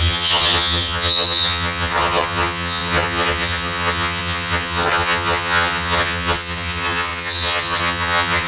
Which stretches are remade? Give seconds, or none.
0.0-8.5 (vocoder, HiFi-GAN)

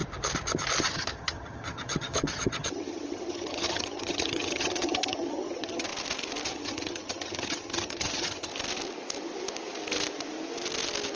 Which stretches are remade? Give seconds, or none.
0.8-5.9 (vocoder, HiFi-GAN); 6.5-8.5